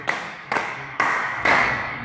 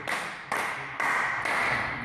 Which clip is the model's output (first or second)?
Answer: first